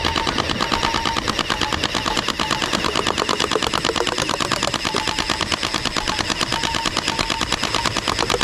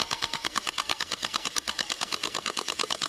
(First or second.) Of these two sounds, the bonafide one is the first